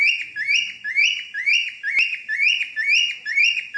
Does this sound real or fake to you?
real